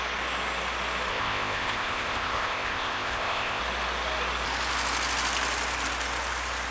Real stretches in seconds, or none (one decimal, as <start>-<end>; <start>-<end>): 0.0-1.1; 3.6-6.7

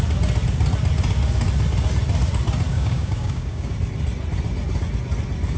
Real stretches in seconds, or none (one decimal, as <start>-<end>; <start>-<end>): 0.0-2.7; 3.7-5.6

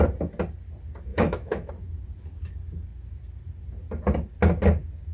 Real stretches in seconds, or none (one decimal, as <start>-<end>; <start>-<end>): 0.0-1.1; 1.7-5.1

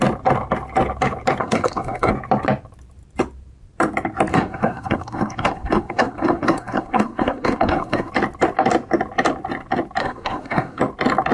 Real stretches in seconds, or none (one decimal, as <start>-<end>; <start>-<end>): 0.0-1.4; 2.1-4.3; 8.1-10.0; 10.8-11.3